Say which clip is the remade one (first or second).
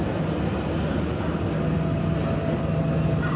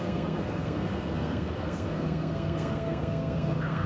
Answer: second